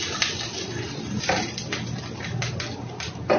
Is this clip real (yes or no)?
yes